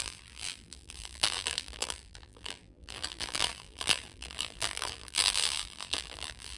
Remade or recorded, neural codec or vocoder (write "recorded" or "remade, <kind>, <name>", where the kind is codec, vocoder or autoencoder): remade, vocoder, BigVGAN v2